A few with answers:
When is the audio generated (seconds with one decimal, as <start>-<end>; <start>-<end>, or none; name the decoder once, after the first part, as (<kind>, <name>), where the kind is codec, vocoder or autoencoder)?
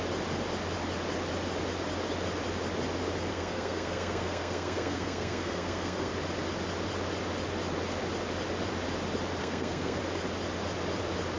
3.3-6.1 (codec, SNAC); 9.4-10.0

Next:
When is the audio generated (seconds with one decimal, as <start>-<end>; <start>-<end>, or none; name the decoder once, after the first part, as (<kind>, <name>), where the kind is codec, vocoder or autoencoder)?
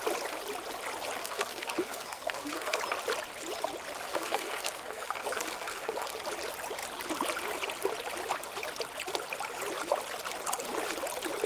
1.2-2.8 (codec, SNAC); 4.1-6.1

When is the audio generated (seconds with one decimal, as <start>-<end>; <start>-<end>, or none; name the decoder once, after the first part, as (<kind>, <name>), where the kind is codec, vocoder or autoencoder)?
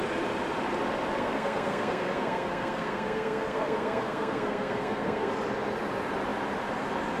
1.2-5.3 (codec, SNAC)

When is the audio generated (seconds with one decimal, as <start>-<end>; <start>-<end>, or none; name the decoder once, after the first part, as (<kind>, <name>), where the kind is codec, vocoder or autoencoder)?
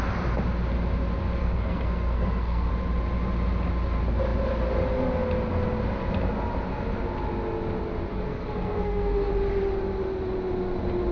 1.4-2.7 (codec, SNAC); 8.1-9.3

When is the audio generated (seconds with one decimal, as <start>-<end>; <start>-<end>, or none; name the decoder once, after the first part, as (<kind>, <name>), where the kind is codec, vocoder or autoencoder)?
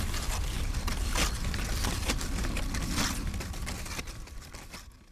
none